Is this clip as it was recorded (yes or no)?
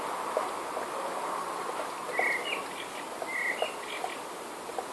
yes